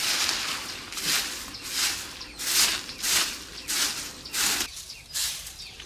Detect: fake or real real